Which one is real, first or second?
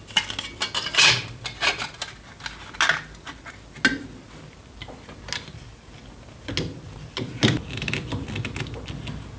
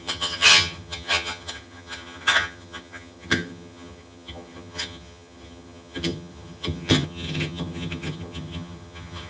first